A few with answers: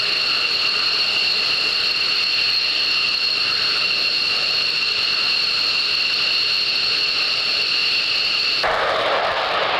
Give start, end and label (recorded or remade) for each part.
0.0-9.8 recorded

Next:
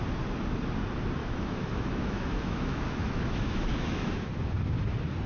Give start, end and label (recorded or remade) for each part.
0.0-1.2 recorded; 1.2-4.3 remade; 4.3-5.3 recorded

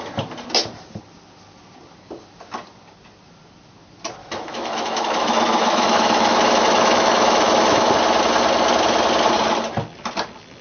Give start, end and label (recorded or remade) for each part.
0.0-4.2 recorded; 4.2-7.9 remade; 7.9-10.6 recorded

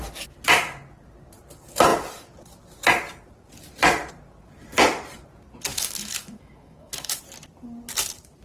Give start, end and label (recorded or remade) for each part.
0.0-5.7 recorded; 5.7-7.2 remade; 7.2-8.4 recorded

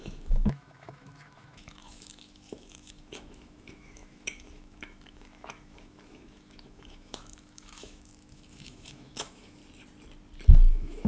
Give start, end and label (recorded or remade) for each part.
0.0-9.6 remade; 9.6-10.7 recorded; 10.7-11.1 remade

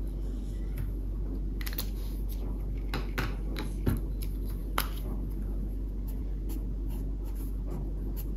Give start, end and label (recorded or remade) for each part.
0.0-8.4 recorded